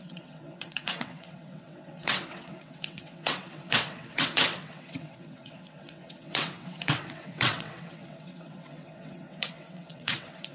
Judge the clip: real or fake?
fake